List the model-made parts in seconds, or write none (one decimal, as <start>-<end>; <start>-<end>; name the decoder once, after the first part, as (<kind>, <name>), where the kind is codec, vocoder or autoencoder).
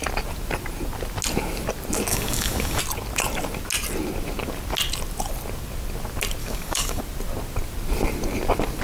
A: 2.1-2.8 (codec, DAC); 6.4-7.0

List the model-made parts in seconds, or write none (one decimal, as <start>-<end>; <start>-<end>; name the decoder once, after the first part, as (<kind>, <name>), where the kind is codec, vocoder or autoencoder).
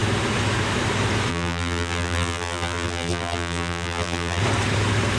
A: 1.3-4.4 (vocoder, BigVGAN v2)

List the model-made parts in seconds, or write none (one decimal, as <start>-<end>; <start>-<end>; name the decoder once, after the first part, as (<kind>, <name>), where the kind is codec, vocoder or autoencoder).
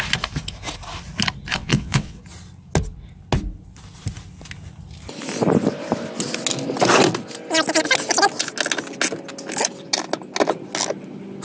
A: 1.5-2.2 (vocoder, WaveNeXt)